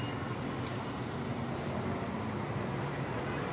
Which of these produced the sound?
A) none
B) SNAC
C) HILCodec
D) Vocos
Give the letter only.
A